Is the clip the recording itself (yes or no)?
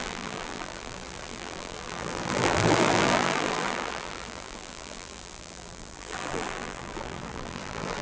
no